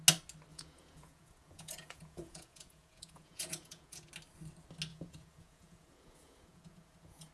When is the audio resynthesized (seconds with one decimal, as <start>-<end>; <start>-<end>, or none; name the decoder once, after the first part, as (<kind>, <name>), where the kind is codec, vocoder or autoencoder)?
0.5-4.1 (vocoder, Vocos); 4.9-7.3